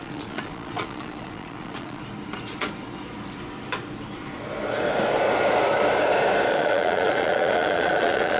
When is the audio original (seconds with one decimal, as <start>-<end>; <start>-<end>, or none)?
2.0-6.5